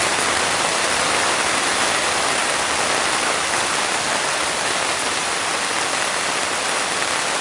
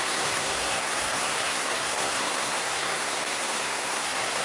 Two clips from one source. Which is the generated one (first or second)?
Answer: second